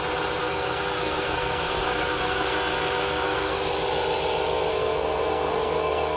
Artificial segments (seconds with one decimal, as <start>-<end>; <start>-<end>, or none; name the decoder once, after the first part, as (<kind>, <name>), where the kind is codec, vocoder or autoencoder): 0.4-3.6 (codec, SNAC); 4.7-6.2